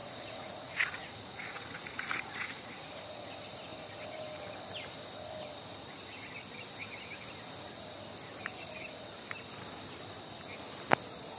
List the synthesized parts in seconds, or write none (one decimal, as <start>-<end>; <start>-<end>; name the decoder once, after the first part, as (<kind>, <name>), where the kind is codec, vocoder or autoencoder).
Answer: 0.0-3.0 (vocoder, Vocos)